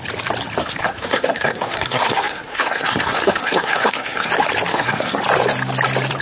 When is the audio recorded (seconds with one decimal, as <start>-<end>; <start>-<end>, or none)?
0.0-0.6; 4.3-4.7; 5.2-6.2